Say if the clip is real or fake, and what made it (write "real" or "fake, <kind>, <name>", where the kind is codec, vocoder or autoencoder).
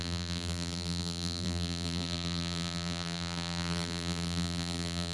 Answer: fake, vocoder, BigVGAN v2